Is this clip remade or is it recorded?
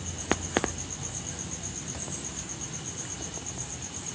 recorded